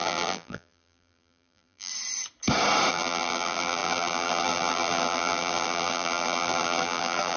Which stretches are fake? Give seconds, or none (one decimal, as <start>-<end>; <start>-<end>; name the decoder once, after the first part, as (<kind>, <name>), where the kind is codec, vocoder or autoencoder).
0.0-1.9 (vocoder, BigVGAN v2); 2.9-7.4